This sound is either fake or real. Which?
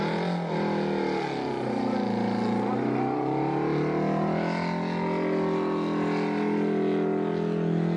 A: real